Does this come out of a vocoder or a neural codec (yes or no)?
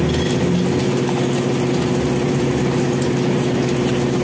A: no